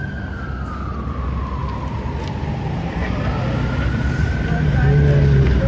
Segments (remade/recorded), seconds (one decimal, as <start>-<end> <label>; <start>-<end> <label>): 0.0-5.7 recorded